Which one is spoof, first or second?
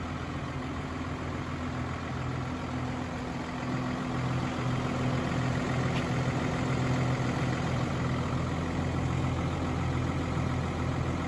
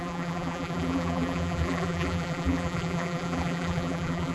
second